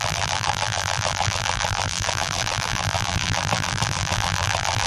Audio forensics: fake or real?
fake